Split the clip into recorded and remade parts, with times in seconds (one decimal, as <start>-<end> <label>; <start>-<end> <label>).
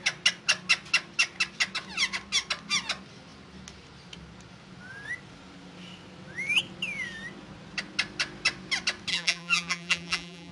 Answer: 0.0-9.1 recorded; 9.1-10.5 remade